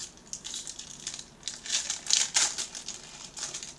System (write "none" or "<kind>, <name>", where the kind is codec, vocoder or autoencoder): none